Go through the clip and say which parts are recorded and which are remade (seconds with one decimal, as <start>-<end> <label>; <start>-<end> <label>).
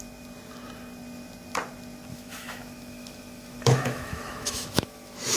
0.0-2.1 recorded; 2.1-5.4 remade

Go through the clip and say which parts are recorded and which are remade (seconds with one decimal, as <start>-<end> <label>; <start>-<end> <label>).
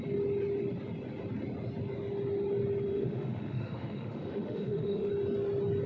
0.0-2.9 recorded; 2.9-5.1 remade; 5.1-5.9 recorded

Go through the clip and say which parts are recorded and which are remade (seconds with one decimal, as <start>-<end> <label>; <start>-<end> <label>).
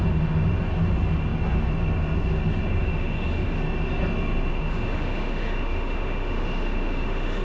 0.0-2.8 recorded; 2.8-3.6 remade; 3.6-4.5 recorded; 4.5-7.4 remade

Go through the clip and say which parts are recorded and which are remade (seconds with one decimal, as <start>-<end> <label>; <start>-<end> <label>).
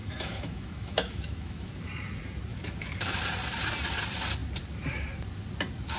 0.0-1.7 remade; 1.7-2.5 recorded; 2.5-3.2 remade; 3.2-6.0 recorded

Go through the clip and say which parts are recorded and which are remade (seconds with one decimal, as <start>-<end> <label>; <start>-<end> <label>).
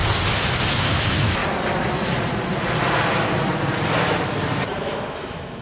0.0-0.7 recorded; 0.7-1.4 remade; 1.4-4.8 recorded; 4.8-5.6 remade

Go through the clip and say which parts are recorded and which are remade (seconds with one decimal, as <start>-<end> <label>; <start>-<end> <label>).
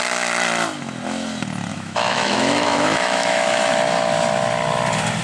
0.0-1.7 recorded; 1.7-3.7 remade; 3.7-5.2 recorded